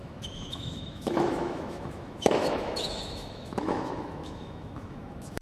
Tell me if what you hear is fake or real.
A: fake